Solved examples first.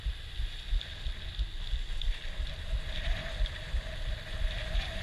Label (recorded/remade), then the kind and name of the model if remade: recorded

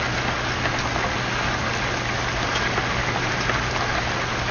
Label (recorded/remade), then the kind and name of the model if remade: recorded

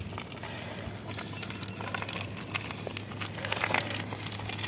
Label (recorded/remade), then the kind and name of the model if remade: remade, vocoder, BigVGAN v2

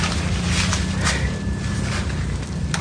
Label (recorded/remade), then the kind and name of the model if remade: recorded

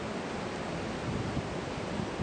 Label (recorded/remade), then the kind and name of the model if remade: recorded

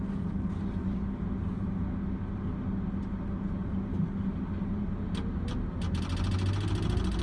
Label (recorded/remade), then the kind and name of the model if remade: recorded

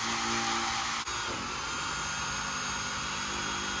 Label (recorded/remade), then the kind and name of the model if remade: recorded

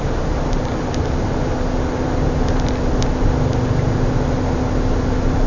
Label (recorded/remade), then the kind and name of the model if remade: recorded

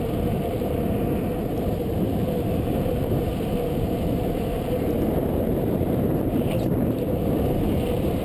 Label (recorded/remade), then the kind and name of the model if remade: remade, vocoder, BigVGAN v2